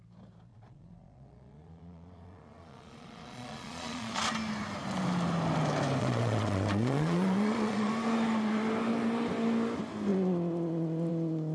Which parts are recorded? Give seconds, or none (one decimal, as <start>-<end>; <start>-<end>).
0.0-0.5; 4.2-6.0; 7.9-11.5